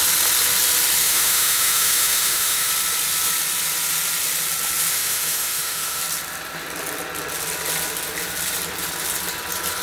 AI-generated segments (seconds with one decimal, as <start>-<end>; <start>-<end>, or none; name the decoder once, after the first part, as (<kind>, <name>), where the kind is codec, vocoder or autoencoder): 1.0-2.7 (autoencoder, DAC-VAE); 4.9-6.0